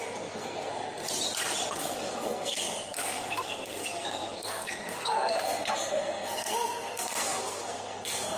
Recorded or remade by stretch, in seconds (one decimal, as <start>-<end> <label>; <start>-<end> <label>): 0.0-1.0 remade; 1.0-1.7 recorded; 1.7-8.4 remade